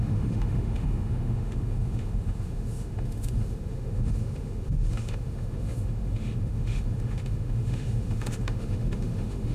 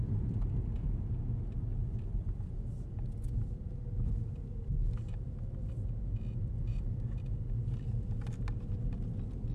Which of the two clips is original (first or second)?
second